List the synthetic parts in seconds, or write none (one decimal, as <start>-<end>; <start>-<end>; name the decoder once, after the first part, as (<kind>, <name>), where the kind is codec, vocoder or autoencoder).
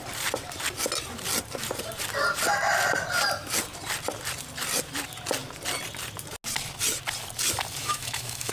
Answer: 7.8-8.5 (autoencoder, DAC-VAE)